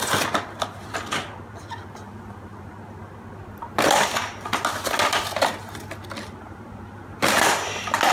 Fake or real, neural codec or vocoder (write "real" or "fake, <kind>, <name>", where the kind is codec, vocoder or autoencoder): real